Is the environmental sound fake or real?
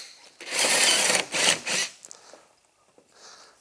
real